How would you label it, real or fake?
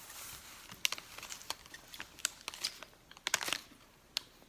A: real